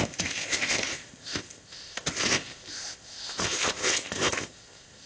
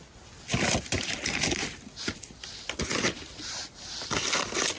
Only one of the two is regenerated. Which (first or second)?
first